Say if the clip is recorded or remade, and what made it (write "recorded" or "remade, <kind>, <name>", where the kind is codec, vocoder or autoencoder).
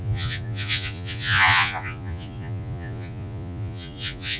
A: remade, vocoder, Vocos